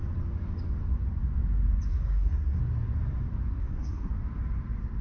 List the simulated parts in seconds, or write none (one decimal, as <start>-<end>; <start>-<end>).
1.9-2.6; 3.6-4.1